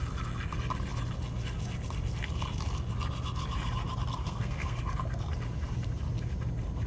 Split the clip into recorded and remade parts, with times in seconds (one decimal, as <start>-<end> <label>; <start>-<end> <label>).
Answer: 0.0-4.2 recorded; 4.2-4.8 remade; 4.8-6.9 recorded